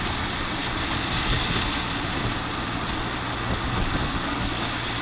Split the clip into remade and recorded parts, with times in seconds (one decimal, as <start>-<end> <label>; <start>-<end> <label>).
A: 0.0-4.0 recorded; 4.0-4.6 remade; 4.6-5.0 recorded